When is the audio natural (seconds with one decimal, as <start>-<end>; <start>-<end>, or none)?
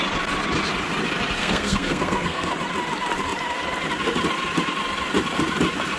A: 0.0-1.4; 2.5-6.0